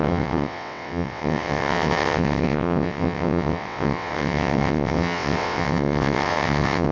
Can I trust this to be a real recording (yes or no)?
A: no